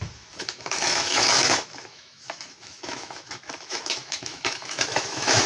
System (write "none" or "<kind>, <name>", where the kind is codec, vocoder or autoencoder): autoencoder, DAC-VAE